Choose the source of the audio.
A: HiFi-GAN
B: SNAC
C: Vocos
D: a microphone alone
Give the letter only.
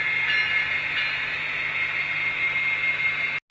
D